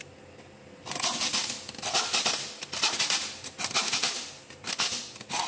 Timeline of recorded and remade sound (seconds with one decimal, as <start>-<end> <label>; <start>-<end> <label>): 0.0-5.5 recorded